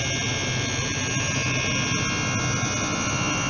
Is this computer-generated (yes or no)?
no